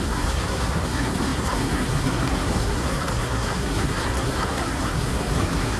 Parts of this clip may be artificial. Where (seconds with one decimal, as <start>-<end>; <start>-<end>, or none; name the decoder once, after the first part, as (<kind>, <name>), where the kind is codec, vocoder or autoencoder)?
0.0-5.8 (codec, SNAC)